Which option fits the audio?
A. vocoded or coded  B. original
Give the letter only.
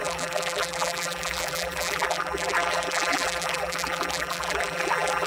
A